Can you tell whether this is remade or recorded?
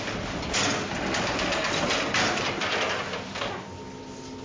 recorded